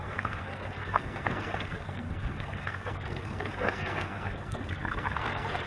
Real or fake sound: fake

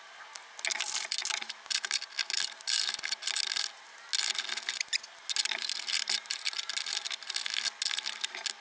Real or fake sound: real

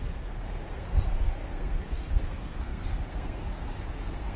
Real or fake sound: fake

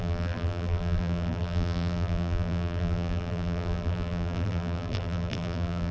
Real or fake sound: fake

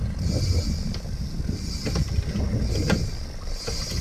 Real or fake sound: real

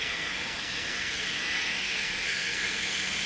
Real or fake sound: fake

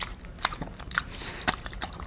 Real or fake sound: real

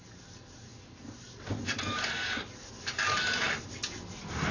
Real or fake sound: real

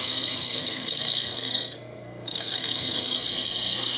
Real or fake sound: fake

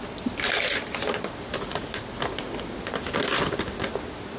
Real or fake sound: real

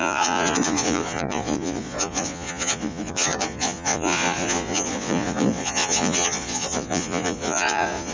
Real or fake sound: fake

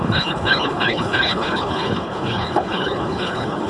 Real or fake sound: fake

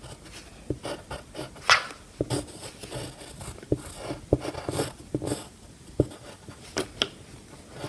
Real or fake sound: real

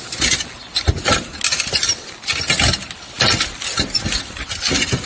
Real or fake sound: real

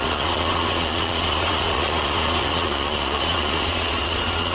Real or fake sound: fake